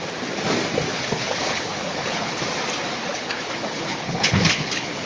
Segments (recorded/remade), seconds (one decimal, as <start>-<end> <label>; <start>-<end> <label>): 0.0-0.9 recorded; 0.9-2.4 remade; 2.4-3.1 recorded; 3.1-5.1 remade